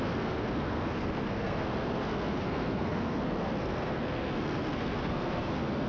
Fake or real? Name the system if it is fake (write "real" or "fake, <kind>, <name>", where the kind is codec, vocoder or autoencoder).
fake, codec, SNAC